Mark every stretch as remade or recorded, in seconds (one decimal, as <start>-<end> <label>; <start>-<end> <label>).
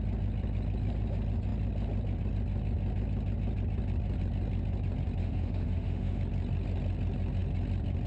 0.0-5.2 recorded; 5.2-6.2 remade; 6.2-8.1 recorded